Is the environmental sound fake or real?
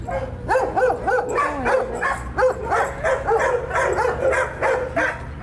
real